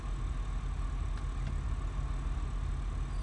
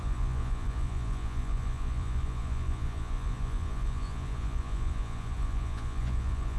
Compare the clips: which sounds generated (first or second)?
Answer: second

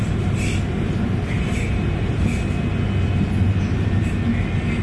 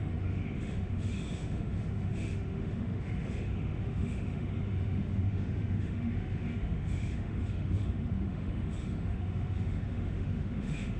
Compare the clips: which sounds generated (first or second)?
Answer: second